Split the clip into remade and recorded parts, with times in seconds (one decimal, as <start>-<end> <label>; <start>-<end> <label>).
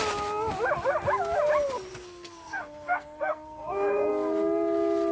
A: 0.0-1.9 recorded; 1.9-4.1 remade; 4.1-5.1 recorded